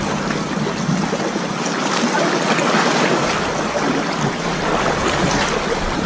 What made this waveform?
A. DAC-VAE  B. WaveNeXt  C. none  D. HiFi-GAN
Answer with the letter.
C